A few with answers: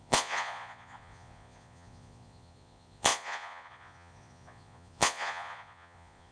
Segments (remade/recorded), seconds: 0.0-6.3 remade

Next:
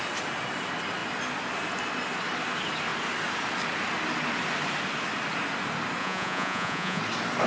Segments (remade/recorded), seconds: 0.0-6.0 recorded; 6.0-7.0 remade; 7.0-7.5 recorded